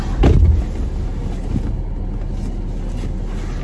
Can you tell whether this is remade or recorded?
recorded